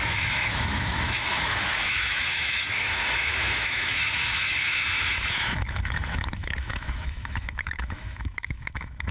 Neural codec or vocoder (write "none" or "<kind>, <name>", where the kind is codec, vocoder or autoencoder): autoencoder, DAC-VAE